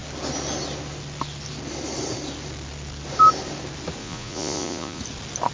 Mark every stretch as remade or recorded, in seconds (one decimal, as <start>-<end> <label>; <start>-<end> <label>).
0.0-4.0 recorded; 4.0-5.0 remade; 5.0-5.5 recorded